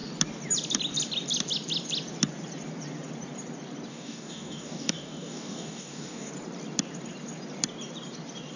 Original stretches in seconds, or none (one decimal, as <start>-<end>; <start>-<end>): 0.0-3.9; 6.3-8.6